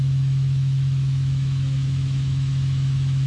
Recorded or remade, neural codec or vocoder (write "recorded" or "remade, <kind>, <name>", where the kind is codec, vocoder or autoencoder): remade, autoencoder, DAC-VAE